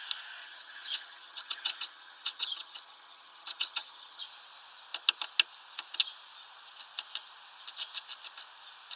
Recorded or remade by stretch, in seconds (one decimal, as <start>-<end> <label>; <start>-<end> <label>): 0.0-0.4 recorded; 0.4-4.2 remade; 4.2-9.0 recorded